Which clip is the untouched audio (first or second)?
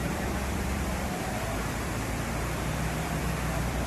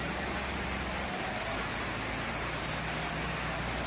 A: second